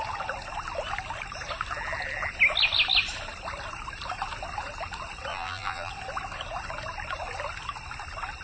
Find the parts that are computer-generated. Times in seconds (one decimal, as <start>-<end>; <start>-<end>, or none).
5.3-5.9

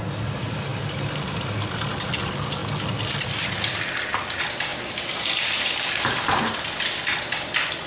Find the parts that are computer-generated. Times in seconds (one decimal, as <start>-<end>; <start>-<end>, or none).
0.7-2.1; 4.7-6.3

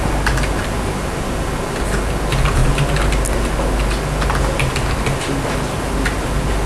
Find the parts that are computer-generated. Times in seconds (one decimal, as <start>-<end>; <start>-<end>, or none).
none

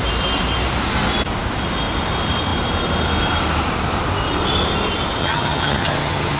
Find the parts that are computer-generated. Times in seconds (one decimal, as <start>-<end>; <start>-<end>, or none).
5.2-6.4

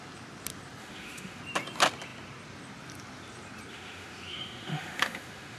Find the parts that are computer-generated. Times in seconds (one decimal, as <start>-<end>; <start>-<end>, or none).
0.8-1.4; 3.7-5.6

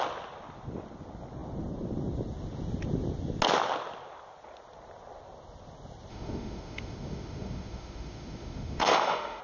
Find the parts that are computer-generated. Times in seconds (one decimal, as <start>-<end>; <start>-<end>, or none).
6.1-9.4